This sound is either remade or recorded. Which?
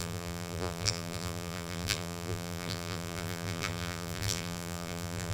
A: remade